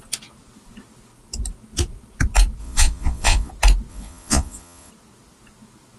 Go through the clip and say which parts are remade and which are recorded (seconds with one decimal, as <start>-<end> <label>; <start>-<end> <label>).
0.0-2.6 recorded; 2.6-3.5 remade; 3.5-3.9 recorded; 3.9-4.9 remade; 4.9-6.0 recorded

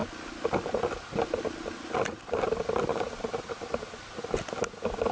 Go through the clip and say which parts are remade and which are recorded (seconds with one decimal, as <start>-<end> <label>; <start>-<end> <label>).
0.0-5.1 recorded